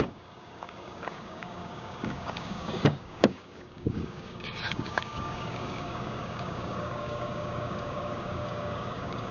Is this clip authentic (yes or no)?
no